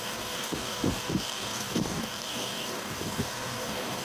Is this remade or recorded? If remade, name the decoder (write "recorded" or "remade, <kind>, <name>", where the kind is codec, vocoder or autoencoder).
remade, codec, DAC